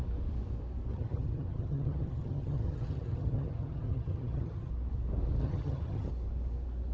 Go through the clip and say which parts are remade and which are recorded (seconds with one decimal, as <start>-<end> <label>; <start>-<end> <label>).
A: 0.0-0.9 recorded; 0.9-4.7 remade; 4.7-5.4 recorded; 5.4-6.1 remade; 6.1-6.9 recorded